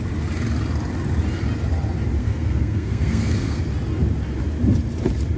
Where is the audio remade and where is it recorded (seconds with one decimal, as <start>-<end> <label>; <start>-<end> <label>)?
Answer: 0.0-2.2 recorded; 2.2-3.6 remade; 3.6-5.4 recorded

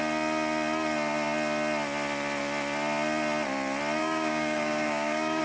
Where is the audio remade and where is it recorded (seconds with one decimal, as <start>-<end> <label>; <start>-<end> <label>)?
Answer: 0.0-4.0 recorded; 4.0-5.4 remade

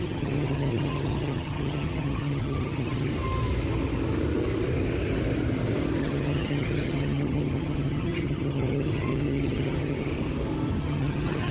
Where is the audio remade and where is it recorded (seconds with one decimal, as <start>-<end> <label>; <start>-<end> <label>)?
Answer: 0.0-3.1 remade; 3.1-6.0 recorded; 6.0-10.1 remade; 10.1-10.8 recorded; 10.8-11.5 remade

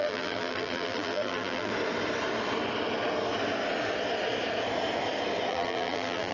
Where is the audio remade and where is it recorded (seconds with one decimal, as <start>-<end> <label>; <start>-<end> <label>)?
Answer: 0.0-1.7 remade; 1.7-5.5 recorded; 5.5-6.3 remade

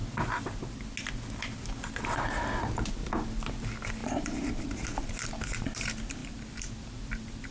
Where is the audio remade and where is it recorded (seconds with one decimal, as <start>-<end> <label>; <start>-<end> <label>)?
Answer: 0.0-0.5 remade; 0.5-4.0 recorded; 4.0-4.6 remade; 4.6-6.2 recorded; 6.2-7.5 remade

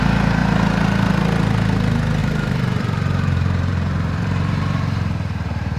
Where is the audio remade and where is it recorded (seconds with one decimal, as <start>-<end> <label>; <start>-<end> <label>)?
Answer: 0.0-2.2 recorded; 2.2-5.8 remade

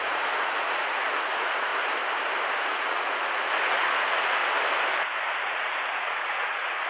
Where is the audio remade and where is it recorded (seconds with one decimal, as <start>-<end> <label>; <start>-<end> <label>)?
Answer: 0.0-1.7 remade; 1.7-2.7 recorded; 2.7-4.4 remade; 4.4-5.4 recorded; 5.4-6.9 remade

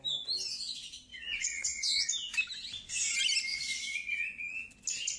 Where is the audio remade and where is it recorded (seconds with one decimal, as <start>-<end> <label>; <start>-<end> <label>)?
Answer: 0.0-1.1 recorded; 1.1-2.1 remade; 2.1-3.5 recorded; 3.5-4.7 remade; 4.7-5.2 recorded